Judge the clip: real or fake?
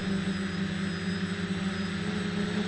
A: real